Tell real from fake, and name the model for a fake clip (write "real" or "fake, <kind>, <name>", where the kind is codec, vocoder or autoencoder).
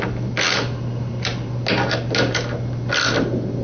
real